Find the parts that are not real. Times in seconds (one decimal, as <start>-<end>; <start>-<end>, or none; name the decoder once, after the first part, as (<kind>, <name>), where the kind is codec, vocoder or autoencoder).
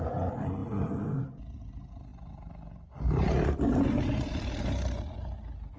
none